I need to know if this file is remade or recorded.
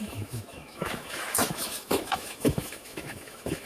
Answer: remade